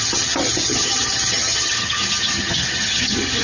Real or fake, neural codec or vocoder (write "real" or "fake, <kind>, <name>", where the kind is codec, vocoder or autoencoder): fake, vocoder, HiFi-GAN